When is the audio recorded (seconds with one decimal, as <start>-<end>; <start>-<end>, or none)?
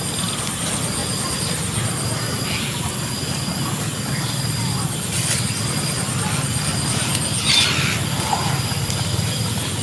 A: 0.0-9.8